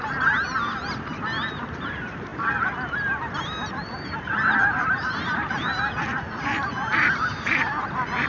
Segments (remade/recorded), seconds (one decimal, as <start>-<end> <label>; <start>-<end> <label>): 0.0-2.3 recorded; 2.3-6.6 remade; 6.6-8.3 recorded